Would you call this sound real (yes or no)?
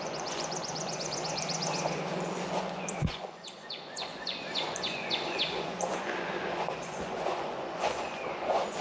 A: no